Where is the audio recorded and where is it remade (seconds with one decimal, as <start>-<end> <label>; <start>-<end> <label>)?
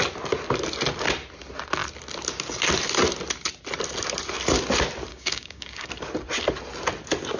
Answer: 0.0-5.1 recorded; 5.1-5.9 remade; 5.9-7.4 recorded